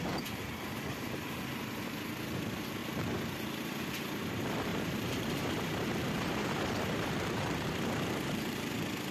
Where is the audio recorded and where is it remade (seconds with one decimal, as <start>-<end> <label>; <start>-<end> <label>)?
0.0-2.8 recorded; 2.8-3.8 remade; 3.8-4.7 recorded; 4.7-8.7 remade; 8.7-9.1 recorded